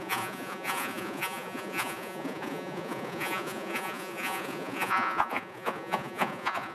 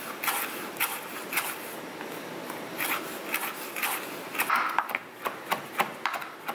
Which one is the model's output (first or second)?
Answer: first